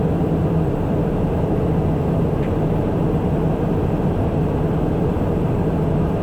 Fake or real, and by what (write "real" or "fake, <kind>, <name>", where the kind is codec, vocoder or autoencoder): fake, vocoder, BigVGAN v2